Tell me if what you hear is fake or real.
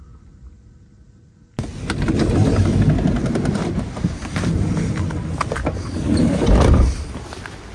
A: real